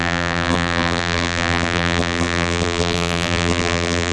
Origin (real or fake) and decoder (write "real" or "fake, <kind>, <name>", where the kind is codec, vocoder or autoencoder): fake, vocoder, BigVGAN v2